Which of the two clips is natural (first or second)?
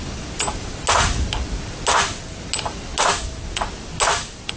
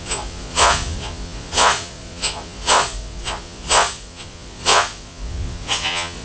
first